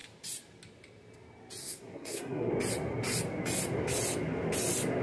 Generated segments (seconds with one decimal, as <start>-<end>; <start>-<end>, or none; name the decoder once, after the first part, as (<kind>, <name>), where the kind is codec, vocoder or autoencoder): 1.6-2.5 (codec, SNAC)

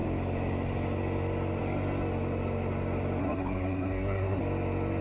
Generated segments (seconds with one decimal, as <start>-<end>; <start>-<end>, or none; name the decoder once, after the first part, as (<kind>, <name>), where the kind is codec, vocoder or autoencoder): 3.2-4.4 (codec, SNAC)

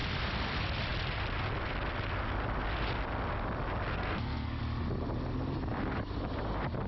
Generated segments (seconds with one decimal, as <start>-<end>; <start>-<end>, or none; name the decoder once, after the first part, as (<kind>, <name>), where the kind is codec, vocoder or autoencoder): 3.9-4.6 (codec, SNAC)

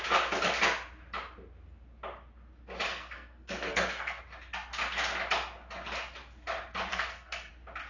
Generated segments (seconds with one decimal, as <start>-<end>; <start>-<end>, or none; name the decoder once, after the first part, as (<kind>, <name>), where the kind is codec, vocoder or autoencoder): 2.9-4.2 (codec, SNAC); 6.9-7.5

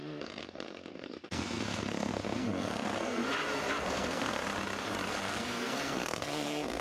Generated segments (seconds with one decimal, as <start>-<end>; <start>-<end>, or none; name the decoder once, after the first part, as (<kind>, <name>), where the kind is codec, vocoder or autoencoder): 0.0-3.2 (codec, SNAC); 3.8-4.4; 5.1-6.8

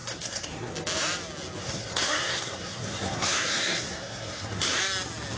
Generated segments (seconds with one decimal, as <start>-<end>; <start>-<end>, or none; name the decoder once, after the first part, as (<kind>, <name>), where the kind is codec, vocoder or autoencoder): 0.0-0.7 (codec, SNAC); 1.6-4.8

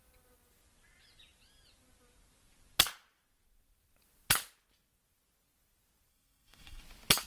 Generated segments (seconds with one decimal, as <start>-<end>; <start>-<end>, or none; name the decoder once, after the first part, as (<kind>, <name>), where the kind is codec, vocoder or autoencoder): 6.1-6.8 (codec, SNAC)